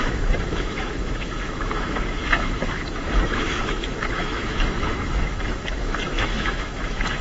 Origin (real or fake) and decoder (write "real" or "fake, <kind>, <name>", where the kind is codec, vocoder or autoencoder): fake, autoencoder, DAC-VAE